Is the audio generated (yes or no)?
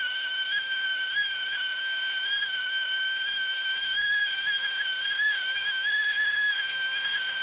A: yes